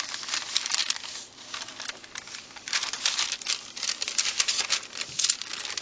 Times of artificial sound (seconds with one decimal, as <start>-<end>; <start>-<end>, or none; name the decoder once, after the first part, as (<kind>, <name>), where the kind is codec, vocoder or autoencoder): none